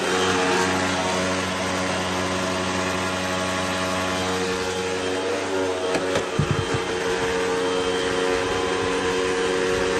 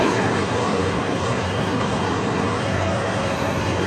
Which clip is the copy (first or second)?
second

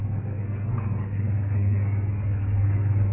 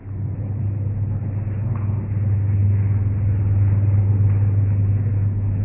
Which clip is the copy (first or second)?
first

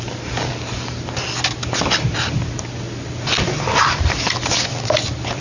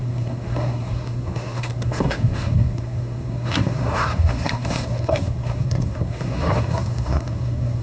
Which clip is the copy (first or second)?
second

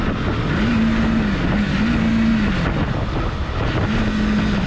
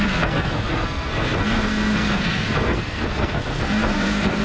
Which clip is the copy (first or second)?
second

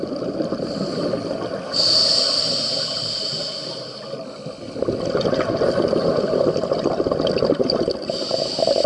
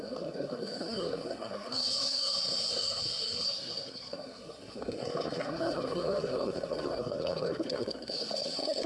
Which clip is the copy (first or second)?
second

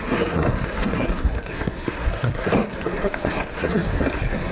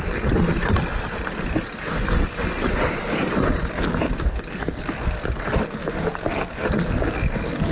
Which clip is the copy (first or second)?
first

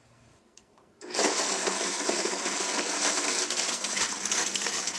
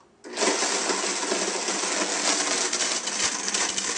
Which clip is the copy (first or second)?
first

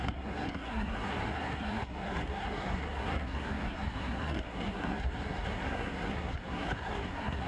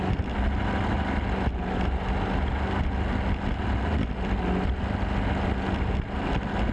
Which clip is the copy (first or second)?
first